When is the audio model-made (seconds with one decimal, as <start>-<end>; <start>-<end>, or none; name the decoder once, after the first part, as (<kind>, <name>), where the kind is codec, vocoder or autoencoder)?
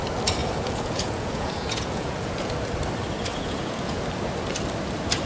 0.4-2.5 (vocoder, Vocos); 3.3-4.0